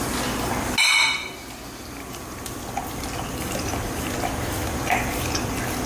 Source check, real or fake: real